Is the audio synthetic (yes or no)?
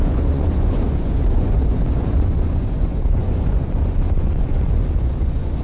yes